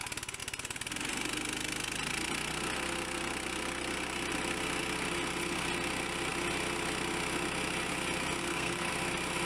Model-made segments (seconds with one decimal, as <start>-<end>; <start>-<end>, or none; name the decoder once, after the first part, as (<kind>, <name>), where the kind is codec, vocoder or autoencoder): 8.4-8.9 (codec, SNAC)